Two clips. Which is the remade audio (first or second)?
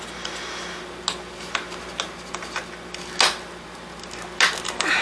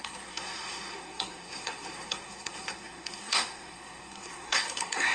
second